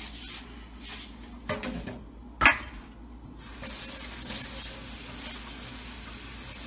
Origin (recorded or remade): recorded